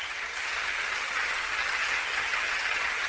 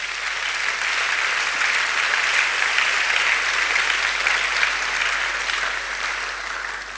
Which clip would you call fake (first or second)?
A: first